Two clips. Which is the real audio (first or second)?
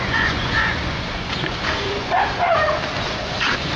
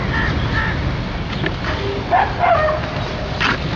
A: second